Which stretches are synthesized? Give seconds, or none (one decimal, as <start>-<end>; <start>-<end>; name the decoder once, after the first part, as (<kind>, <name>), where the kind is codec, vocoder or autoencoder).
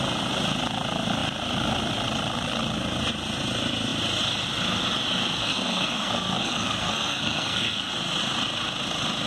5.4-7.9 (codec, SNAC)